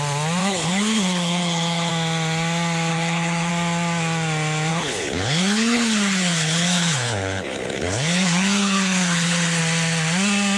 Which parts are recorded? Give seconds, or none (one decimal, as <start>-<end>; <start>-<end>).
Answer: 0.0-0.4; 1.9-2.9; 3.5-4.7; 9.6-10.6